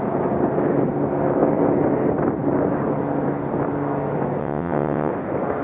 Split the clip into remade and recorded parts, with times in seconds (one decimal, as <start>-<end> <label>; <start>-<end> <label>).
0.0-4.4 recorded; 4.4-5.1 remade; 5.1-5.6 recorded